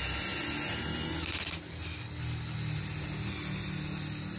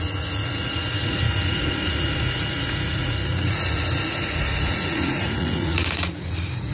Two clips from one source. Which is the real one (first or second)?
first